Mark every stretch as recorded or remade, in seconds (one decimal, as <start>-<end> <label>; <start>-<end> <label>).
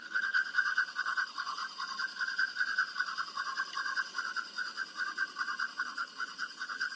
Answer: 0.0-0.4 remade; 0.4-1.0 recorded; 1.0-1.6 remade; 1.6-5.8 recorded; 5.8-7.0 remade